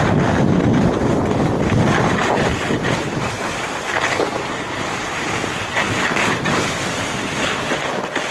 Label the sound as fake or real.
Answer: real